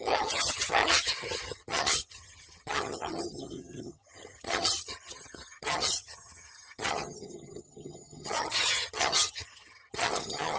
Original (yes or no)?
no